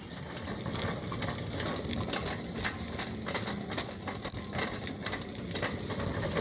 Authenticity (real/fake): real